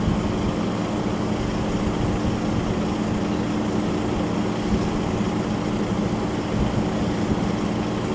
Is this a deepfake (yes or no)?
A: no